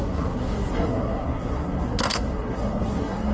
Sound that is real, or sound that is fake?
fake